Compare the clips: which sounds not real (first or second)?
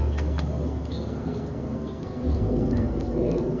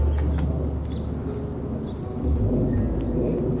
first